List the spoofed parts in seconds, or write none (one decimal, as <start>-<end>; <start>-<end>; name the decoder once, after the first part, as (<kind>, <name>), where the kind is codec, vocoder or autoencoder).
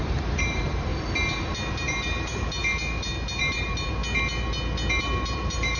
0.0-0.9 (vocoder, BigVGAN v2); 1.7-2.6; 3.4-4.0; 5.0-5.8